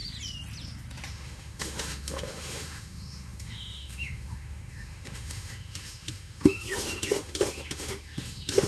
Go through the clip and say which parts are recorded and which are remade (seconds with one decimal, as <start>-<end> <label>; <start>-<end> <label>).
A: 0.0-1.1 recorded; 1.1-8.7 remade